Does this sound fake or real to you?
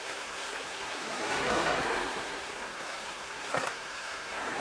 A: fake